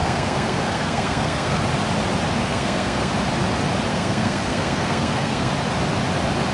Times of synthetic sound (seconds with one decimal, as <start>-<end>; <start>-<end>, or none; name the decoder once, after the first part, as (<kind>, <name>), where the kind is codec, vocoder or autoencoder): 0.0-1.6 (codec, SNAC); 2.4-3.1; 3.9-5.5